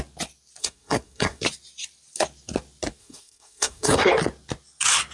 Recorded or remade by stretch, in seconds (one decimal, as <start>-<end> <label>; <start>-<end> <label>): 0.0-0.6 recorded; 0.6-1.4 remade; 1.4-3.0 recorded; 3.0-4.1 remade; 4.1-5.1 recorded